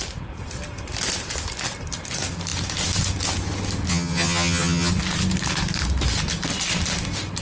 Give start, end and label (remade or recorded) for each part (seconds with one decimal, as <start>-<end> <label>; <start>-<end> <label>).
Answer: 0.0-3.9 recorded; 3.9-4.9 remade; 4.9-7.4 recorded